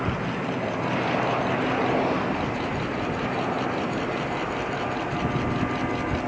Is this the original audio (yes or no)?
yes